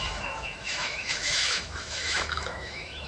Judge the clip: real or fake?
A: fake